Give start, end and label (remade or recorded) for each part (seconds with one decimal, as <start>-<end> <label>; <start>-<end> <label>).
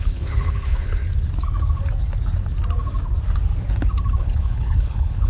0.0-1.0 remade; 1.0-4.2 recorded; 4.2-5.3 remade